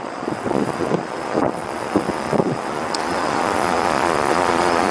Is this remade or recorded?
remade